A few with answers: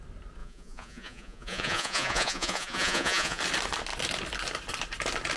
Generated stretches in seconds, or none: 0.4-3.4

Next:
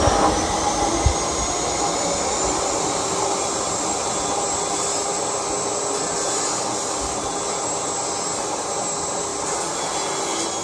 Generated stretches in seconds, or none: none

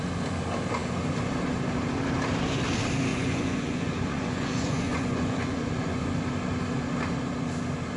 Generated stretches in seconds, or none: 3.1-6.0